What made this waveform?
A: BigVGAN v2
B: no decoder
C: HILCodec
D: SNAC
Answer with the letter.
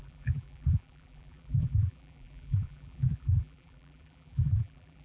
A